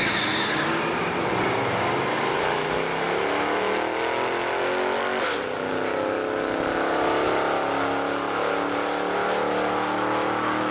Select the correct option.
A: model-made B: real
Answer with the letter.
B